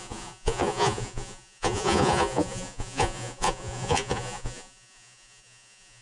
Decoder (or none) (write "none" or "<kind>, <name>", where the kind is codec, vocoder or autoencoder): vocoder, Vocos